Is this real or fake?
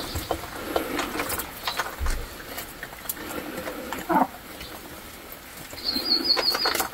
real